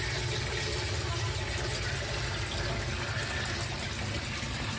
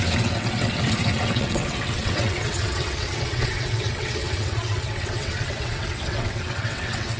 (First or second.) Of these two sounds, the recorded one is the first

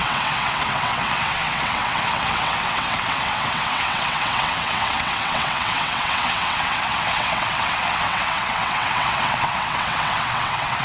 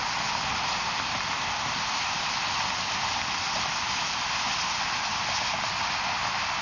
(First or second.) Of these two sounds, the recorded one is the second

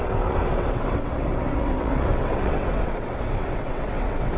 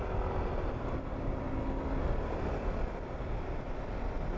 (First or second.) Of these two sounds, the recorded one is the second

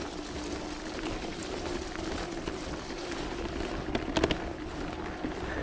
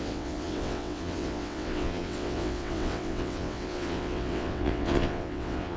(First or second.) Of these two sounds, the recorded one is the first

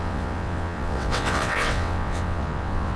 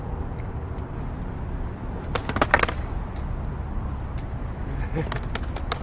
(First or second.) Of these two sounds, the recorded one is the second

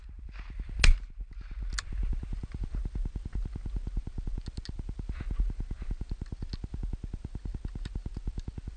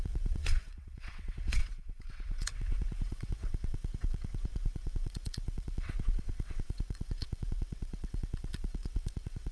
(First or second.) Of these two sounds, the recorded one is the first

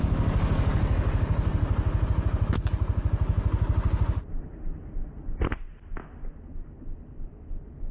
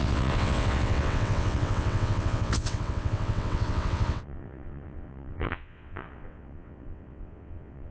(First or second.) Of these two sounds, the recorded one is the first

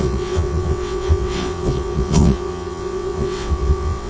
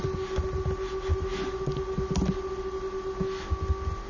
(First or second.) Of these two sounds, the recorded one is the second